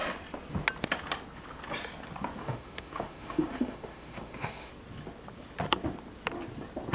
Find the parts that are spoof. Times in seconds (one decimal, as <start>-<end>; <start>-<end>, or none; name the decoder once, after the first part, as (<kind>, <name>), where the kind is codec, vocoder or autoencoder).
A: 2.4-4.7 (autoencoder, DAC-VAE)